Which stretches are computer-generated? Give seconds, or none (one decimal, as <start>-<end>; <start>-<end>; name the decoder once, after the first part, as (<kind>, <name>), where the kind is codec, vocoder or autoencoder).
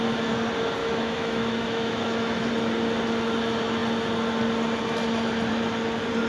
0.8-2.5 (autoencoder, DAC-VAE)